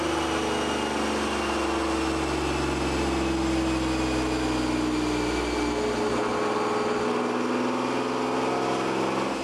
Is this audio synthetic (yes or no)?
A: no